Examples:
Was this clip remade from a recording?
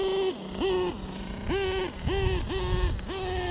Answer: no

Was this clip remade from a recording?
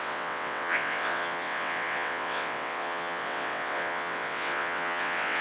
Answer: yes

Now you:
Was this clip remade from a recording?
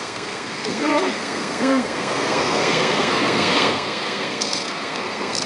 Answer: yes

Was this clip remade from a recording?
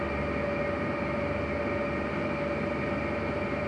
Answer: no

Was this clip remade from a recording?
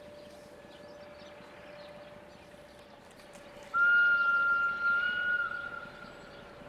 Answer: no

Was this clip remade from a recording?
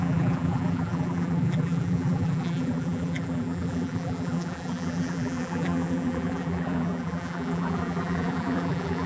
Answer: yes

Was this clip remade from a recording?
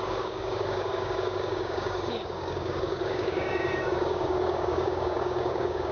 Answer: yes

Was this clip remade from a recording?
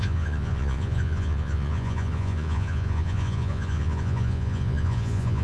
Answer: yes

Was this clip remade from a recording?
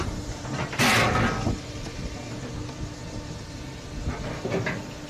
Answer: no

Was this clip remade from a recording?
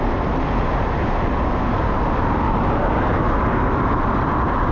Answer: no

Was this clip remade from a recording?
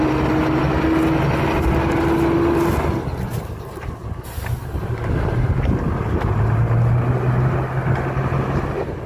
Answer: no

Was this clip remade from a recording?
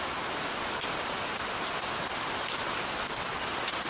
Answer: no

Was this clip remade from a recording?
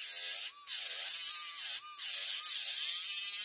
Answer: no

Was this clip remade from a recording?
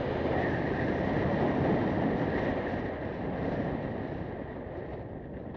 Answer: no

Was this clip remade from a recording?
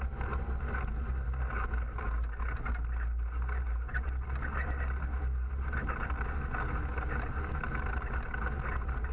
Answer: no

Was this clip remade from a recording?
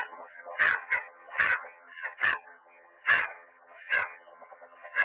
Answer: yes